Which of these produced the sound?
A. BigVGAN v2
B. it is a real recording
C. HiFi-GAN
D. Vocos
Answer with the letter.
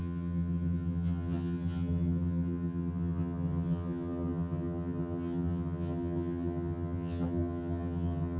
C